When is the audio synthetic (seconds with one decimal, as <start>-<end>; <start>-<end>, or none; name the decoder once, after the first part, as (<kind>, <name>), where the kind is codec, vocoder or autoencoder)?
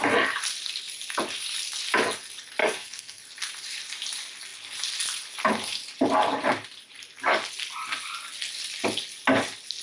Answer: 2.6-3.2 (codec, SNAC)